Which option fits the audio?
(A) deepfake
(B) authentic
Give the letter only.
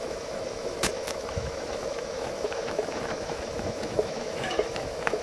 A